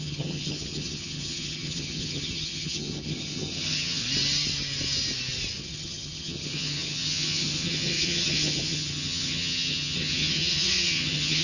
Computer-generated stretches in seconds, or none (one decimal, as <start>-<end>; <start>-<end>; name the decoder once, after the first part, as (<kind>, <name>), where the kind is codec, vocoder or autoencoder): 0.0-4.0 (vocoder, HiFi-GAN); 5.6-11.4